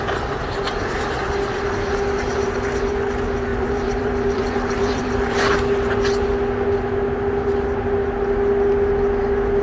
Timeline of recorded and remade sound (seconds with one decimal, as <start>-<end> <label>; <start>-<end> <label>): 0.0-3.5 recorded; 3.5-5.5 remade; 5.5-9.6 recorded